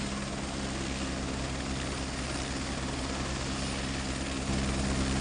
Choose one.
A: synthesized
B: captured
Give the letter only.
B